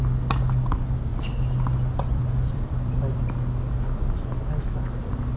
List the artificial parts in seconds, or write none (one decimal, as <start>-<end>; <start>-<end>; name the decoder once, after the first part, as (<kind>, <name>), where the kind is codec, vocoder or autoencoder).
1.1-3.2 (vocoder, BigVGAN v2)